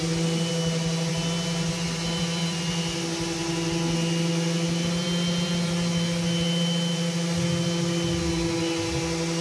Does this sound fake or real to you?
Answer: real